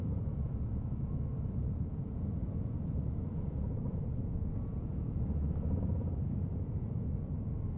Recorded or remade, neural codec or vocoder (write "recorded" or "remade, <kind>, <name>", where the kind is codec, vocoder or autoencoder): remade, vocoder, Vocos